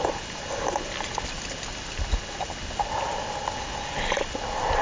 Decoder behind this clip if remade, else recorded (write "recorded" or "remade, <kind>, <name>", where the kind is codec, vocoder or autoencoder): recorded